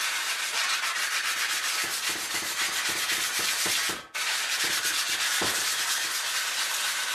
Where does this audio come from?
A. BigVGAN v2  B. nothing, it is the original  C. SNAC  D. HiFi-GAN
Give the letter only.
B